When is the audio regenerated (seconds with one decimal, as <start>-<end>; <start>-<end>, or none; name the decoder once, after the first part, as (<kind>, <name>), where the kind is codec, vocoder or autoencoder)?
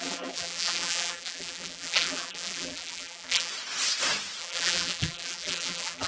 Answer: 0.0-3.5 (vocoder, BigVGAN v2); 4.4-6.1